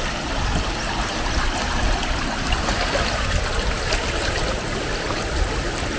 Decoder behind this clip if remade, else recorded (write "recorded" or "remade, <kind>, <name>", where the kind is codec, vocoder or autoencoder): recorded